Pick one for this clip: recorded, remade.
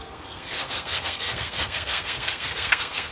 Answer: remade